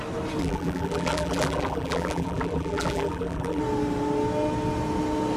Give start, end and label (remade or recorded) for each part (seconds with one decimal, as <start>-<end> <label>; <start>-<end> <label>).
0.0-0.4 recorded; 0.4-3.6 remade; 3.6-5.4 recorded